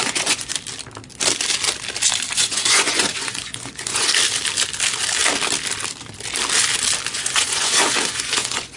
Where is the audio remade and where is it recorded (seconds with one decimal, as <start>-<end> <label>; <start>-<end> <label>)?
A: 0.0-0.5 remade; 0.5-2.3 recorded; 2.3-4.1 remade; 4.1-7.1 recorded; 7.1-8.8 remade